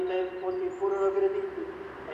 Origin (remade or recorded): recorded